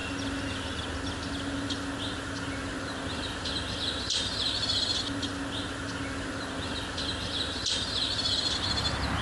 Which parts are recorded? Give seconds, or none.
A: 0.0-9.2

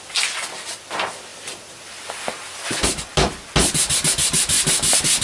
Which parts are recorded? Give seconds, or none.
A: 0.0-1.3; 2.1-5.2

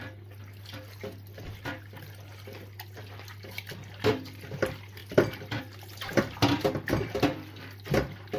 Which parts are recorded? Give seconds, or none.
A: 0.0-8.4

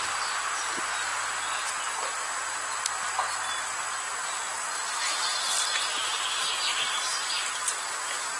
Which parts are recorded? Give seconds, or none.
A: 0.0-1.1; 6.1-8.4

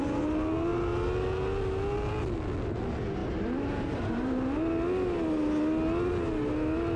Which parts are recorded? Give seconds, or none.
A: 0.0-3.2; 4.7-7.0